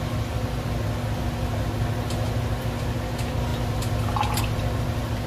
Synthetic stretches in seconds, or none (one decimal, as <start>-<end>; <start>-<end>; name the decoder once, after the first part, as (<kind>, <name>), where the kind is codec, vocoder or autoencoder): none